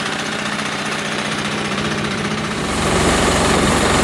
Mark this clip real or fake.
fake